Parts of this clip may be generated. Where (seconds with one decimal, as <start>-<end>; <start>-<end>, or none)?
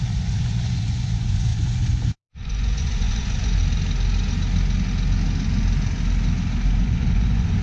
0.0-3.6; 6.8-7.6